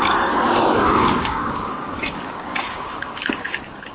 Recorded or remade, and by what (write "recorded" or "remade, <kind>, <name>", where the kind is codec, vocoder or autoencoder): remade, codec, DAC